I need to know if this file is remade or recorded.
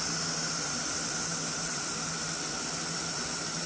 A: recorded